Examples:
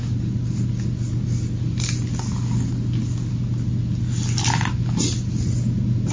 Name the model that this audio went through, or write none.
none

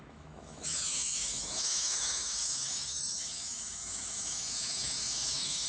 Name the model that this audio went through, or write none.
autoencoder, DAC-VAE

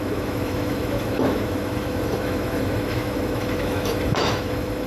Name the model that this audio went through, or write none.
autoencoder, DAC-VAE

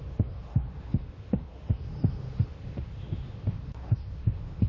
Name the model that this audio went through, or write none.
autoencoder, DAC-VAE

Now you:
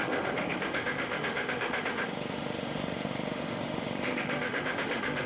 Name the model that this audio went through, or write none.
autoencoder, DAC-VAE